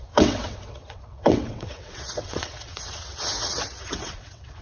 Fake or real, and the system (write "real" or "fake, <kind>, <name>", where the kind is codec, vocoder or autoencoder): fake, vocoder, WaveNeXt